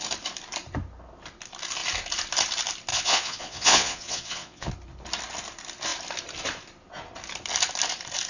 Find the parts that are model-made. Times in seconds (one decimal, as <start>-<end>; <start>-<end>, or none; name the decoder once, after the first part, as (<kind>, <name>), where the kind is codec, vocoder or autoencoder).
2.9-4.7 (vocoder, Vocos)